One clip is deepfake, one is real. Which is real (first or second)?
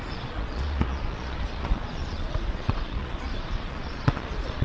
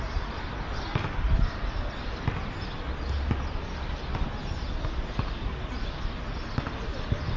second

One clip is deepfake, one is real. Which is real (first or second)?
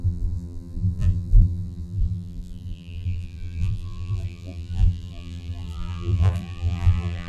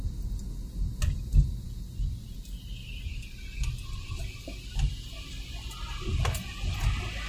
second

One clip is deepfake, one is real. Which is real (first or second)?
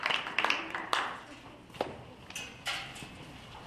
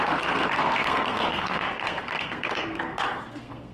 first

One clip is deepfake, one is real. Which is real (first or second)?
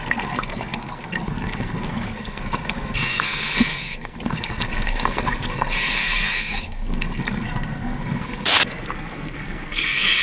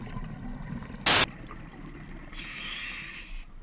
second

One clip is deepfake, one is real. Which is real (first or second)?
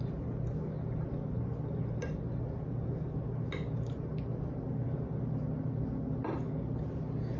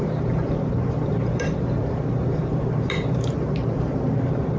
first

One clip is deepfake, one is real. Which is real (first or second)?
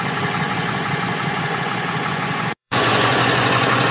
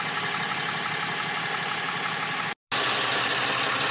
second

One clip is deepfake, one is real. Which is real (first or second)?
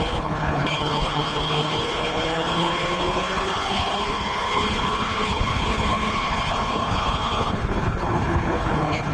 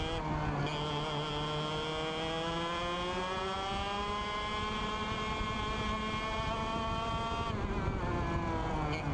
second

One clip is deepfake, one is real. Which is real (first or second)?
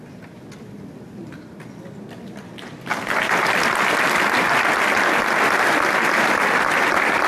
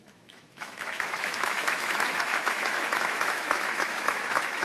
first